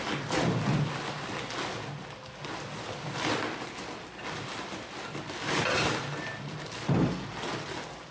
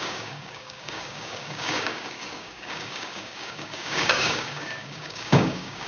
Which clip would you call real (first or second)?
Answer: first